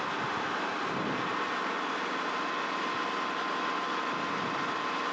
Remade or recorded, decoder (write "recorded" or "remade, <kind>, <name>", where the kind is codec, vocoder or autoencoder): recorded